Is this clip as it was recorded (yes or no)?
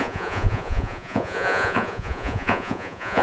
no